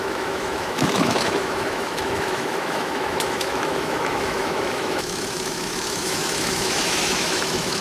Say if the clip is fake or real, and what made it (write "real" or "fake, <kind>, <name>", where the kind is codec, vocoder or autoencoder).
fake, autoencoder, DAC-VAE